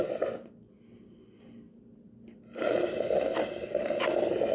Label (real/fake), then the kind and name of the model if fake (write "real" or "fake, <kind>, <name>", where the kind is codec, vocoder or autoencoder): real